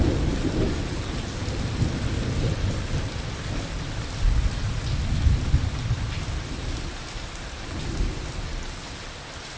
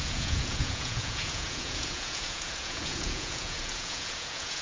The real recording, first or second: first